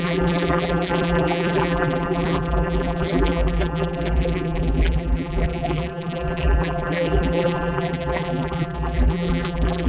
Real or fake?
fake